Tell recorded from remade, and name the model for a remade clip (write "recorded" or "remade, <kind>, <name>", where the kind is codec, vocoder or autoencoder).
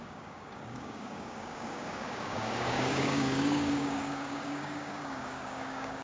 remade, codec, DAC